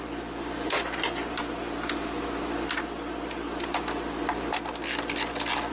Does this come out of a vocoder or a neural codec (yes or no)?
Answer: no